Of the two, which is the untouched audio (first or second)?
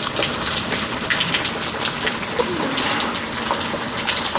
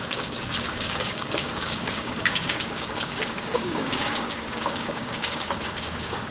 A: first